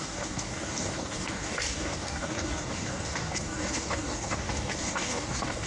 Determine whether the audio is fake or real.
fake